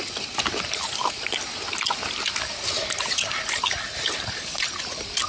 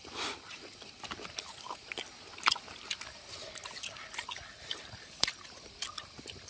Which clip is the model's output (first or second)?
second